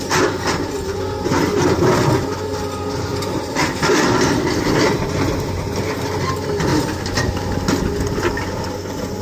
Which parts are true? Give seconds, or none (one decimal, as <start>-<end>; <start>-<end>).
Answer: 0.0-3.1; 4.8-9.2